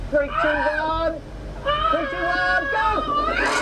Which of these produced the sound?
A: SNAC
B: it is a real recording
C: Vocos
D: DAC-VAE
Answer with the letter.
B